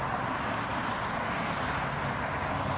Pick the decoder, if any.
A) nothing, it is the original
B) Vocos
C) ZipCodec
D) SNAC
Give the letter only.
A